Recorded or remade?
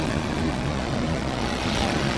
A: remade